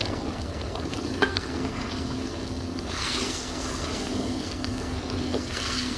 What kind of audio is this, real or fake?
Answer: fake